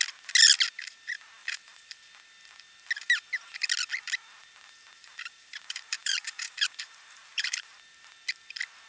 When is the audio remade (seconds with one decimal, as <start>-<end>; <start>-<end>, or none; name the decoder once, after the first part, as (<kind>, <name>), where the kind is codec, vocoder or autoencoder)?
1.4-2.0 (vocoder, BigVGAN v2); 5.0-7.8